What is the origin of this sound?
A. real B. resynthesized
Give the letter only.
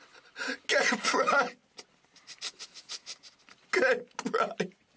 A